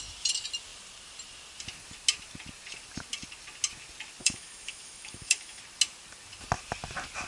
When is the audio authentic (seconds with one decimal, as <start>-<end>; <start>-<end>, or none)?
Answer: 0.0-4.2; 5.6-7.3